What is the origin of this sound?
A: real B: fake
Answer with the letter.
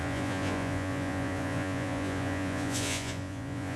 B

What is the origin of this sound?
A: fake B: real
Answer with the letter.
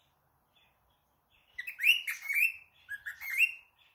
A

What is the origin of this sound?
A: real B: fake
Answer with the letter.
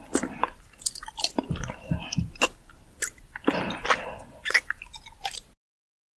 A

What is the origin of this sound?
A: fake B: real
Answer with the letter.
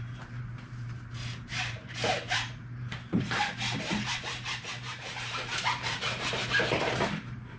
A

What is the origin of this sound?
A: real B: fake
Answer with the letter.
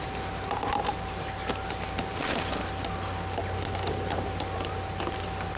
A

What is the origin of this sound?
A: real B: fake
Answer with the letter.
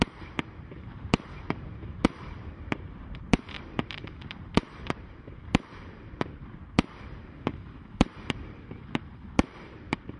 B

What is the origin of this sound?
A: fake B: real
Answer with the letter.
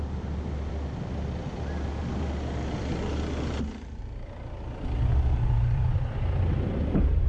B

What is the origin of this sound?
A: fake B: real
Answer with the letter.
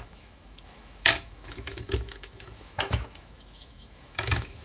A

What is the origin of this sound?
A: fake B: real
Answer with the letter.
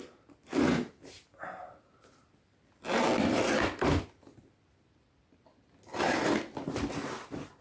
B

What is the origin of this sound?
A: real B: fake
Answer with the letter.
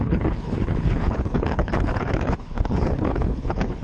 B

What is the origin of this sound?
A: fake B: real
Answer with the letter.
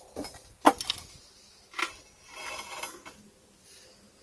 B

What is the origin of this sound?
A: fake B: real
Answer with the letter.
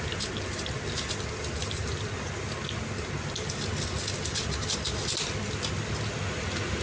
B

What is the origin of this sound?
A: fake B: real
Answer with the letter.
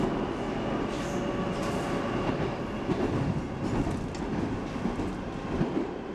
B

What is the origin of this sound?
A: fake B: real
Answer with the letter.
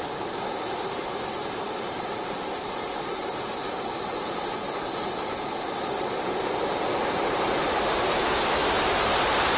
A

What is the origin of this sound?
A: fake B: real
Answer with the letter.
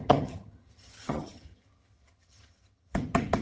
A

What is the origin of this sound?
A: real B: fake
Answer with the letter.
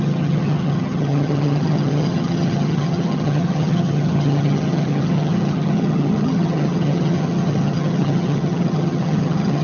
B